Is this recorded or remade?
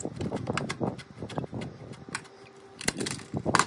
recorded